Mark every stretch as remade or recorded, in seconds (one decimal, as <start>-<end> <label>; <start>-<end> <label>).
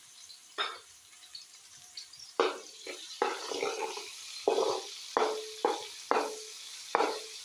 0.0-0.4 recorded; 0.4-4.5 remade; 4.5-6.7 recorded; 6.7-7.4 remade